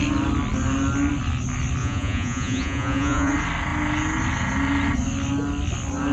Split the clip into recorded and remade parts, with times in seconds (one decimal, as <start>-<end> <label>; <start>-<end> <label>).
0.0-1.8 recorded; 1.8-3.3 remade; 3.3-6.1 recorded